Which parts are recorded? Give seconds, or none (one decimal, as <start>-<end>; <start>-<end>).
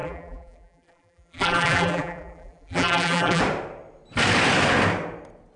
3.4-5.6